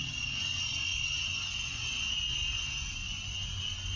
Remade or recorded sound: remade